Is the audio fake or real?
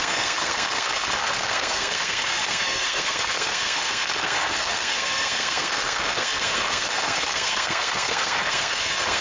fake